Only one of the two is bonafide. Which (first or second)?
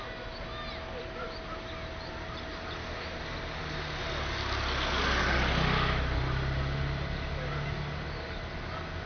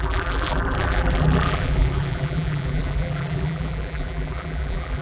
first